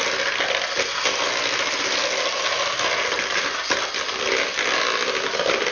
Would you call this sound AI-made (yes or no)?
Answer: no